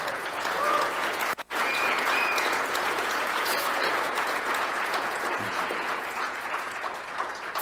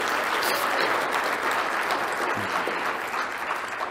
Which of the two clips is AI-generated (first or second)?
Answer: first